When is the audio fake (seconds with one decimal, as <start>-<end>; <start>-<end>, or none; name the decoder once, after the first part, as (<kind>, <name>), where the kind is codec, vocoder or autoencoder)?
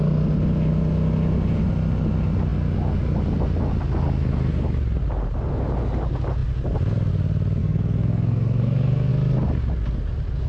7.6-9.1 (codec, SNAC)